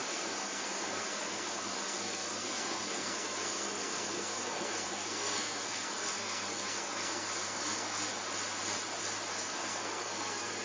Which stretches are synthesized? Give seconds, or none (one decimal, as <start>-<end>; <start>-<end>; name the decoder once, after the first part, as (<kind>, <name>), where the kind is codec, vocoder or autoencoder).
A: 0.0-8.1 (codec, SNAC); 9.3-10.6